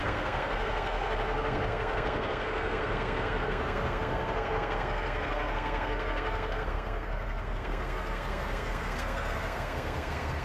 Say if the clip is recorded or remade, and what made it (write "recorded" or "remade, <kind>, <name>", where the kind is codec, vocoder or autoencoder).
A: remade, codec, SNAC